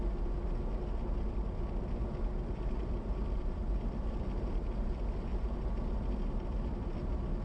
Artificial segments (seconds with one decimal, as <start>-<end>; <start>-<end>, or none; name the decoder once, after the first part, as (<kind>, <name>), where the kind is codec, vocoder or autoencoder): 6.7-7.4 (vocoder, BigVGAN v2)